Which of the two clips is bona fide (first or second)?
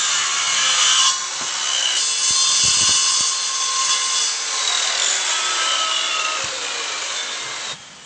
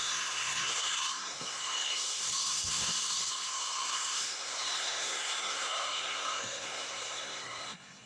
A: first